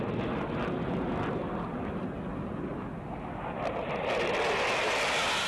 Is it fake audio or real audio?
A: real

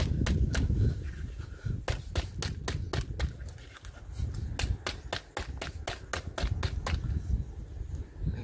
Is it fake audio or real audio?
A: real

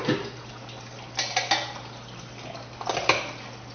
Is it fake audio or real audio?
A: real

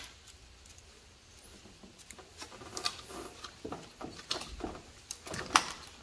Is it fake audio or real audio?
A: real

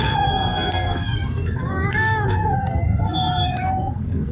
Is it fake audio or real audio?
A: fake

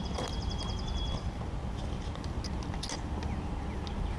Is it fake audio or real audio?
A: real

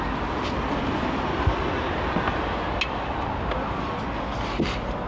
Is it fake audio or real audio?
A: real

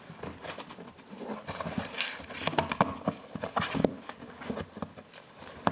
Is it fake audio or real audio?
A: real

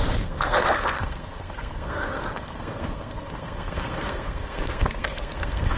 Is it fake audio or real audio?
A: fake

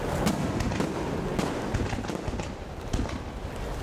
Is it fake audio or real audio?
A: real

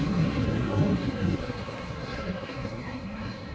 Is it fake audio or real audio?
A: fake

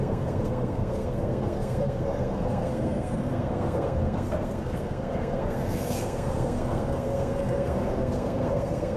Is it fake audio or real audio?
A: fake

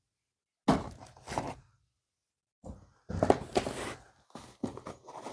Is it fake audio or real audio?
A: real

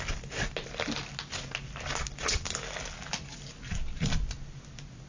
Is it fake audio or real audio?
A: real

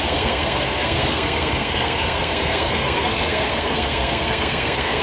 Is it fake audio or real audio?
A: fake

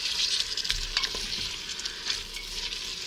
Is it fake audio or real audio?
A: real